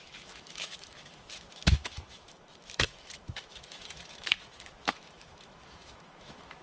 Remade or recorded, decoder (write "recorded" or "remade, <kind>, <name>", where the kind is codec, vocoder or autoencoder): remade, autoencoder, DAC-VAE